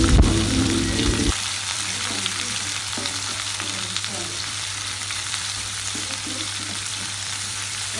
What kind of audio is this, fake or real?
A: fake